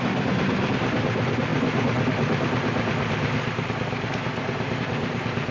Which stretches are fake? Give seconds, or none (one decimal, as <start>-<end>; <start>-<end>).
0.0-1.5; 4.8-5.5